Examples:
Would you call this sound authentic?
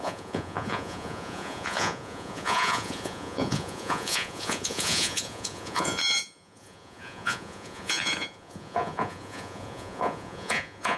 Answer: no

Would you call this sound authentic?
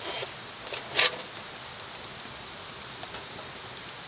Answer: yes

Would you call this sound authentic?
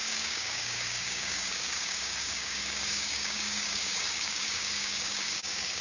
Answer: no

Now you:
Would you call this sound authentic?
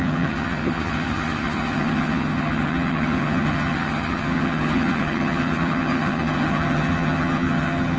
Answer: no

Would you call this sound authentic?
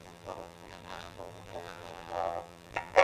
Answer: no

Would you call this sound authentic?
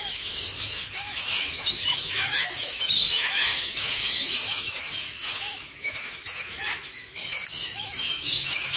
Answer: no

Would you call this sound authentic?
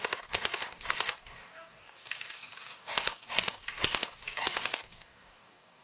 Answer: no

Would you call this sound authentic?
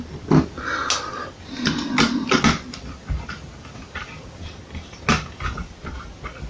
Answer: yes